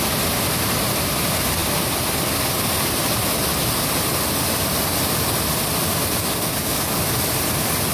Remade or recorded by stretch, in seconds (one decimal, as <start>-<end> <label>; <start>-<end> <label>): 0.0-6.2 recorded; 6.2-7.0 remade; 7.0-7.9 recorded